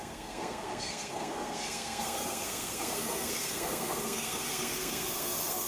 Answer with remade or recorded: remade